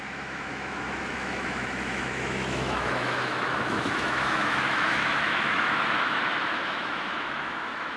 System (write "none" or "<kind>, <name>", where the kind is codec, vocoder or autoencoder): autoencoder, DAC-VAE